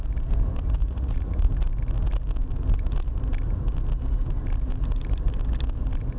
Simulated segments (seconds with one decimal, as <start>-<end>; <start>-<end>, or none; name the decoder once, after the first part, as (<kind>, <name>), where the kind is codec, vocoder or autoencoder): 0.8-1.5 (vocoder, Vocos)